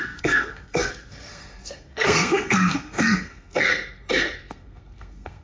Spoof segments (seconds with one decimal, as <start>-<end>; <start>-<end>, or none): 0.0-5.4